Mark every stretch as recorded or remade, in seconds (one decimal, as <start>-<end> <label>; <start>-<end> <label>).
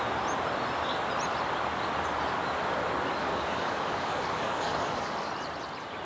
0.0-3.2 recorded; 3.2-5.3 remade; 5.3-6.0 recorded